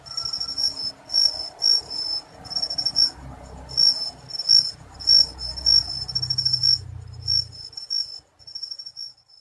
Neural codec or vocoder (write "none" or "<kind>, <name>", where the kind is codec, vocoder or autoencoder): none